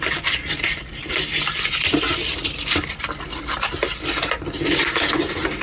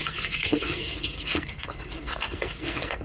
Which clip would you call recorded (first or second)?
first